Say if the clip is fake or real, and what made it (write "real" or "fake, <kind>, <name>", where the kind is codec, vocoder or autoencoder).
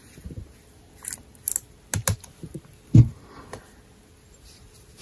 real